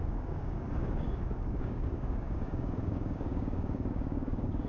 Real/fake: fake